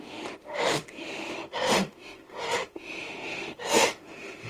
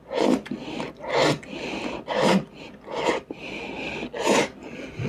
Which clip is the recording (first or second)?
second